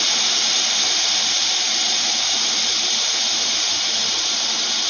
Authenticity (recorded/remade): recorded